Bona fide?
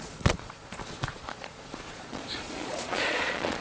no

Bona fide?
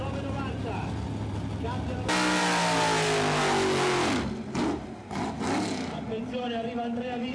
yes